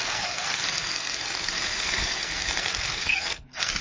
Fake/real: fake